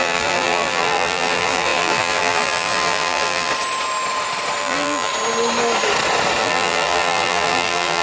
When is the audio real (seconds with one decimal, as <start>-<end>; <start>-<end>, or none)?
3.5-4.6; 5.1-6.4